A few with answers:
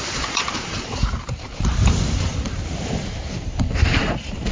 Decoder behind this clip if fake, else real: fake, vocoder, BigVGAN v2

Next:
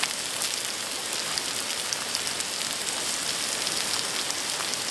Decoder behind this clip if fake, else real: real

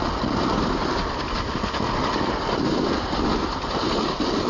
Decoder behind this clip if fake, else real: real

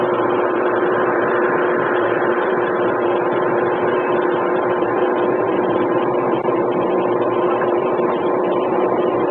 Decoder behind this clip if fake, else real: fake, vocoder, BigVGAN v2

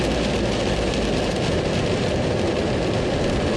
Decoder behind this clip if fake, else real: real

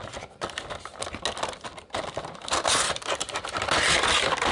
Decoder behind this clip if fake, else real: real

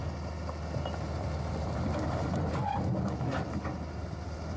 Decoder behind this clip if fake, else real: real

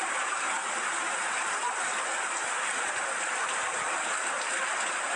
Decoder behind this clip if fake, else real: real